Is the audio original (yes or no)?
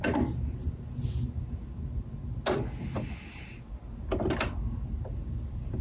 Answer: yes